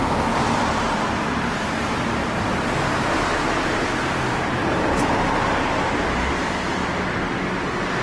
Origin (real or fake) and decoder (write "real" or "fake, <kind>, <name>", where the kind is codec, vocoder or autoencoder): real